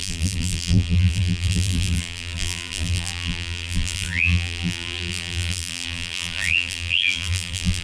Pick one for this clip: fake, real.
fake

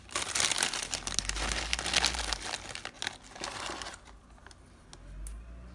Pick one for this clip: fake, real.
real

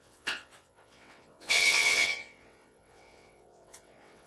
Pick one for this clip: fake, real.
fake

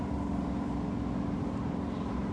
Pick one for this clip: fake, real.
real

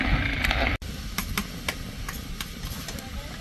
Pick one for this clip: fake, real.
real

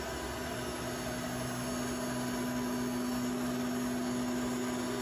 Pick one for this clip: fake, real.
real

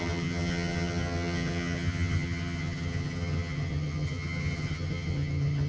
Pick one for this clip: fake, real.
fake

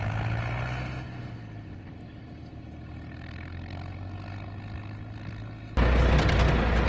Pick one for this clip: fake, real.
real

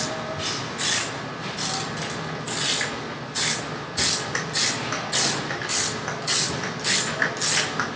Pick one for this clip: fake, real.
real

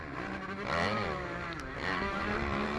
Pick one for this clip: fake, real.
real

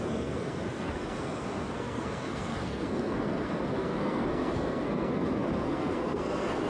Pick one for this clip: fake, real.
fake